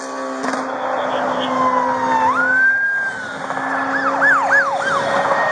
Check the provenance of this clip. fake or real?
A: real